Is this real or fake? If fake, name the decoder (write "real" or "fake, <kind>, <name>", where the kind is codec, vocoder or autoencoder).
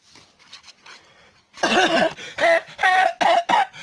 real